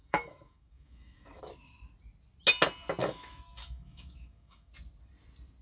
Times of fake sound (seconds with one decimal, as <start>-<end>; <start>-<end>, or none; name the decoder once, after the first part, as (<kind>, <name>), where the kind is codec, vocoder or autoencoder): 0.0-1.4 (autoencoder, DAC-VAE); 3.0-4.7